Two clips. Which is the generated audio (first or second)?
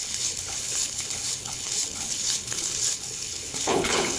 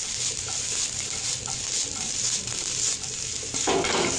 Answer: first